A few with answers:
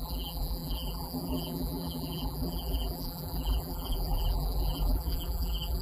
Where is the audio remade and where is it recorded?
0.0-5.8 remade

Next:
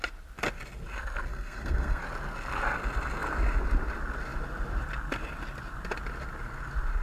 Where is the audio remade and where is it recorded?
0.0-1.3 recorded; 1.3-2.0 remade; 2.0-7.0 recorded

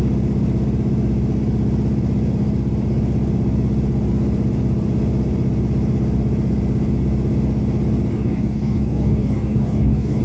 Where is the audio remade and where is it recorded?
0.0-8.1 recorded; 8.1-10.2 remade

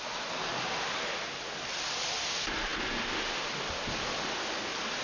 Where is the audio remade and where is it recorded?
0.0-5.0 recorded

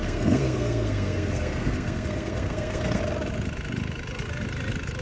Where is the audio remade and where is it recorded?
0.0-3.0 remade; 3.0-5.0 recorded